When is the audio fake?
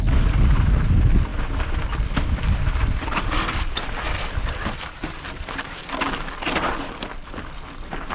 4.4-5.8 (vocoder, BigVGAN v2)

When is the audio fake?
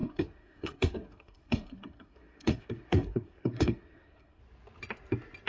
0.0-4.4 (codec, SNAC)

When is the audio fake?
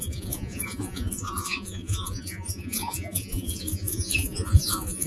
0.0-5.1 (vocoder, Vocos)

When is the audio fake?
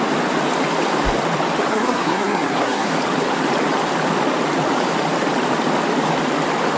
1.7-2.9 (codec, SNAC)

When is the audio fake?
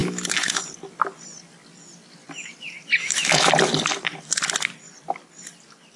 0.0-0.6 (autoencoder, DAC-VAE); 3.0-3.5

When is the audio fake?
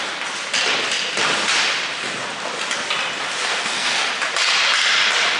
3.5-4.1 (codec, SNAC)